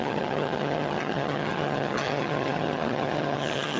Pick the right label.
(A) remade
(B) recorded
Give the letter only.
A